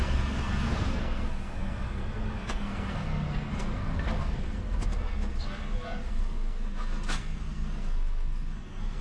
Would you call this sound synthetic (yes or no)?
yes